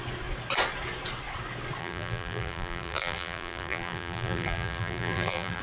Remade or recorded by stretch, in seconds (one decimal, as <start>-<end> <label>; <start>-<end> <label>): 0.0-1.8 recorded; 1.8-5.6 remade